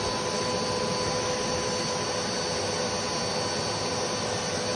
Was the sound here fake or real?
real